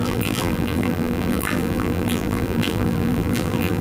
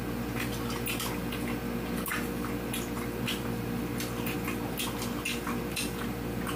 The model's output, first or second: first